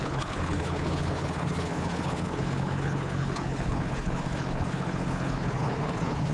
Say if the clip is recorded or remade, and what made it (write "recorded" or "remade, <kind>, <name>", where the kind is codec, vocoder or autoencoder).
remade, codec, HILCodec